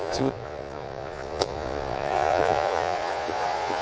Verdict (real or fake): fake